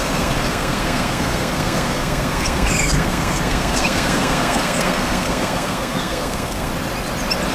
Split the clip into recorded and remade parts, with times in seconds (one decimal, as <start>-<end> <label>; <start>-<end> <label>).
0.0-6.7 remade; 6.7-7.5 recorded